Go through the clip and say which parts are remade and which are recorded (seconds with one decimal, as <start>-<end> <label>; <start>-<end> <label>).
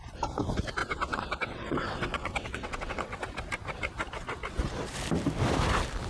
0.0-0.8 recorded; 0.8-3.2 remade; 3.2-6.1 recorded